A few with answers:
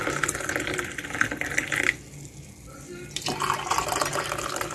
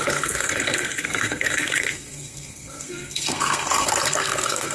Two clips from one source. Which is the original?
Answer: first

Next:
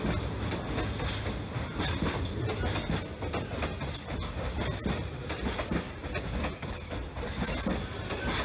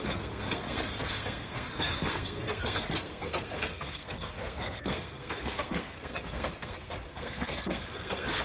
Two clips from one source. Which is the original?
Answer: first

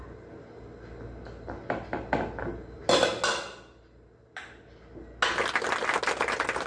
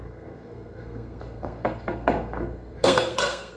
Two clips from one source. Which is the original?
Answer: first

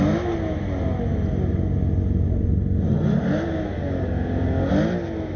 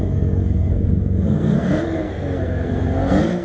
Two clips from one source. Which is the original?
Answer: first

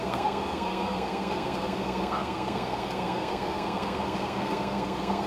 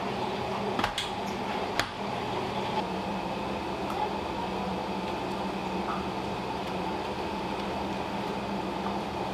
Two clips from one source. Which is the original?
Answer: second